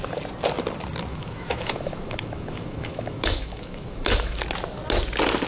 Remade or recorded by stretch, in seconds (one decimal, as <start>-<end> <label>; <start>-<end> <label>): 0.0-1.1 recorded; 1.1-4.4 remade; 4.4-5.5 recorded